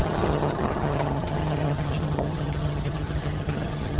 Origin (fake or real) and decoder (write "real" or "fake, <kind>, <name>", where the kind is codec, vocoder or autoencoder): fake, vocoder, HiFi-GAN